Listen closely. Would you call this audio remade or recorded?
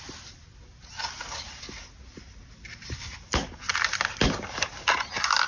recorded